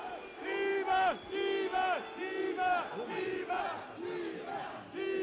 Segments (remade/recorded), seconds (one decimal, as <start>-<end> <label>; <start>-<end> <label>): 0.0-5.2 recorded